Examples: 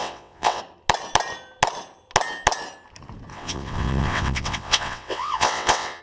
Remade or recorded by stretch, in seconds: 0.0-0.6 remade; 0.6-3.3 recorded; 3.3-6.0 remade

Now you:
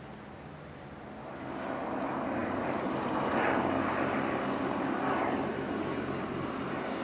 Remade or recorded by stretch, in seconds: 0.0-7.0 recorded